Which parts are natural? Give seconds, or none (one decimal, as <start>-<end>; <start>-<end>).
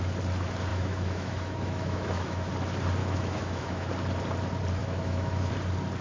0.0-0.7; 2.5-3.0; 3.9-4.8; 5.5-6.0